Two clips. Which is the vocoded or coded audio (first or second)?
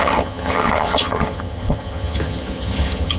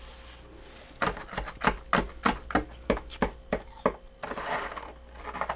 first